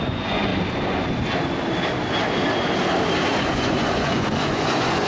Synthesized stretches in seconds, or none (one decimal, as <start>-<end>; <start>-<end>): 0.0-0.5; 3.4-5.1